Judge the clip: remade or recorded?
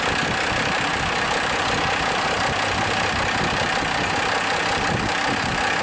recorded